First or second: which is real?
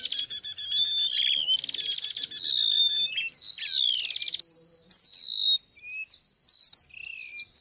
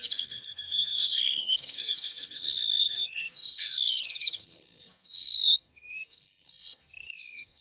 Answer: first